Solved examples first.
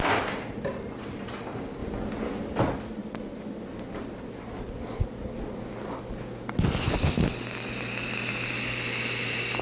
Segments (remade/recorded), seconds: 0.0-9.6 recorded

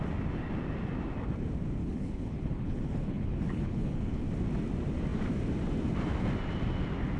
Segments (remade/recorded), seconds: 0.0-1.8 recorded; 1.8-4.2 remade; 4.2-7.2 recorded

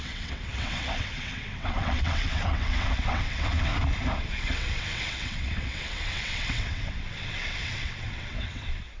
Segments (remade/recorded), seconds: 0.0-3.7 remade; 3.7-4.4 recorded; 4.4-9.0 remade

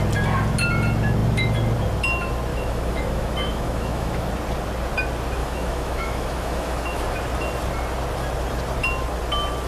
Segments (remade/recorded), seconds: 0.0-2.5 recorded; 2.5-4.3 remade; 4.3-5.4 recorded; 5.4-7.0 remade; 7.0-9.7 recorded

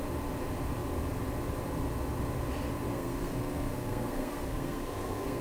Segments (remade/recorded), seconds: 0.0-2.9 recorded; 2.9-5.4 remade